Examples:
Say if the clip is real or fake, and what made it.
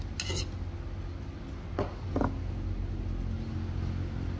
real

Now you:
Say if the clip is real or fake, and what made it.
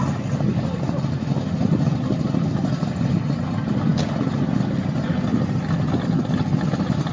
real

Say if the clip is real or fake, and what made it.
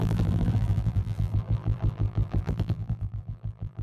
fake, vocoder, BigVGAN v2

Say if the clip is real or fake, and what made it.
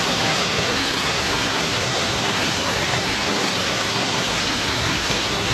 fake, codec, SNAC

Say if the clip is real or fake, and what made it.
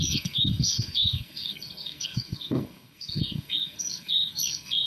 fake, codec, SNAC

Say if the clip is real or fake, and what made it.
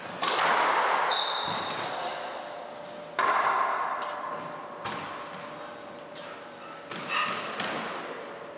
real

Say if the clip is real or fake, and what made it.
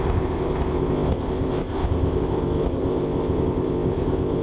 fake, codec, ZipCodec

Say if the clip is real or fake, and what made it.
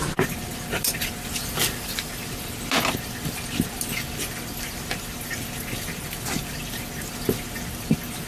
real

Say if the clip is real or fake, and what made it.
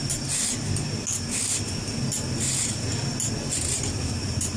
real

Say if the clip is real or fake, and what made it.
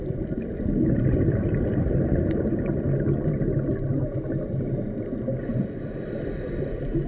real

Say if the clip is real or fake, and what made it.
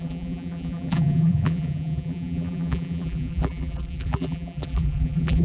fake, vocoder, BigVGAN v2